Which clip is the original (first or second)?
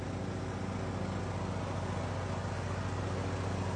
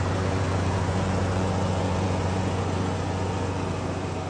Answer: first